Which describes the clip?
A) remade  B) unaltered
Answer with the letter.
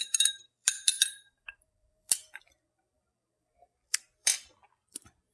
A